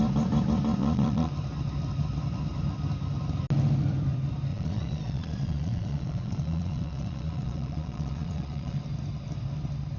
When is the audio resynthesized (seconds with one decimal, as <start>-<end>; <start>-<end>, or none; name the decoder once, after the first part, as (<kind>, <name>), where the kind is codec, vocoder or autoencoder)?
0.8-1.3 (vocoder, Vocos); 4.5-8.8

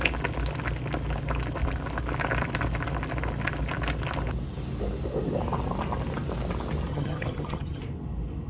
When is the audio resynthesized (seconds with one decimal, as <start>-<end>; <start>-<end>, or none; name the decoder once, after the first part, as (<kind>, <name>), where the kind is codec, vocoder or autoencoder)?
6.9-7.8 (vocoder, HiFi-GAN)

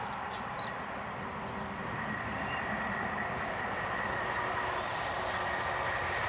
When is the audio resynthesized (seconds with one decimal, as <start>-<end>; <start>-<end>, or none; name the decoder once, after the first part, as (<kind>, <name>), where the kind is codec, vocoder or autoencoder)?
2.3-5.2 (vocoder, BigVGAN v2)

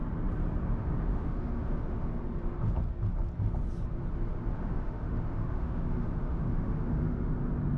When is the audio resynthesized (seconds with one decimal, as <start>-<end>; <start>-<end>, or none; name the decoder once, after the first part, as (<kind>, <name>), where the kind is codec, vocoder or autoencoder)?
1.1-2.1 (autoencoder, DAC-VAE); 4.5-7.3

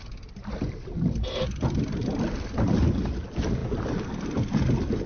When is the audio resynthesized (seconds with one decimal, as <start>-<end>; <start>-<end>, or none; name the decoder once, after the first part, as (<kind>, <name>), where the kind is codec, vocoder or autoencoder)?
none

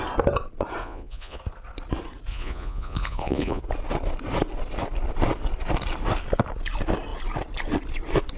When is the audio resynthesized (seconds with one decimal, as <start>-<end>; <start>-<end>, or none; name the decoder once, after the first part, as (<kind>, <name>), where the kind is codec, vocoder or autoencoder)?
0.8-1.4 (vocoder, Vocos); 2.3-3.6

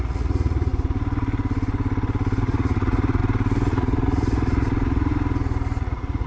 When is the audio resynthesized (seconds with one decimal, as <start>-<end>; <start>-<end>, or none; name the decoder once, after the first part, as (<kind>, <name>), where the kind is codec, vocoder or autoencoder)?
0.0-0.7 (vocoder, Vocos); 2.4-3.2; 3.7-5.1; 5.8-6.3

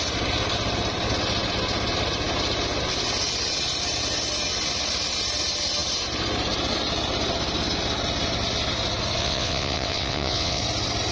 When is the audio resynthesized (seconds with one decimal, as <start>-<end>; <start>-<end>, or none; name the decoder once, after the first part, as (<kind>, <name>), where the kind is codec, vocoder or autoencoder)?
9.2-10.6 (vocoder, WaveNeXt)